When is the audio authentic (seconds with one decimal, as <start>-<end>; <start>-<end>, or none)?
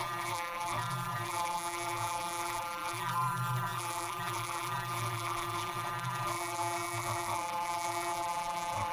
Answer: none